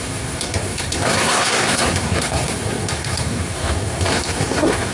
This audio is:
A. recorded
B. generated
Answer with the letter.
B